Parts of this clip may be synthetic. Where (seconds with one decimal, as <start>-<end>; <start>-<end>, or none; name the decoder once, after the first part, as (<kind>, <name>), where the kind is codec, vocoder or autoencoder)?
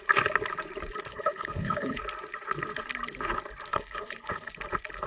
1.1-2.0 (codec, HILCodec); 3.7-4.5